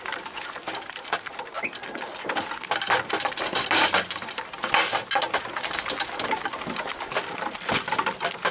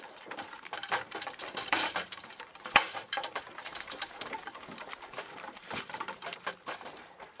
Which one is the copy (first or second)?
second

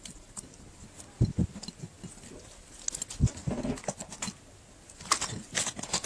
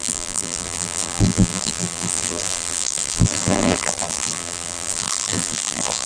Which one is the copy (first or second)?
second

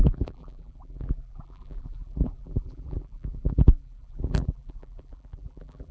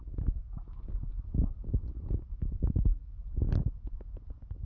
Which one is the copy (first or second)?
first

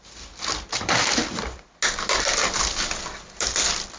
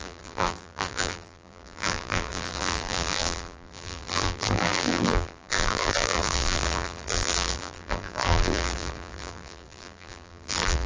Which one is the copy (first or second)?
second